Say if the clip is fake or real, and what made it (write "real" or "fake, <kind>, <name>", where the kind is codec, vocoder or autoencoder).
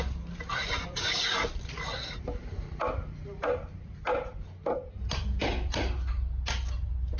real